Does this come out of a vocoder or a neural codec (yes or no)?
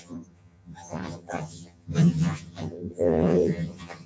yes